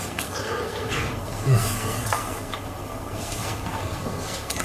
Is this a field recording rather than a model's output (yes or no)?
no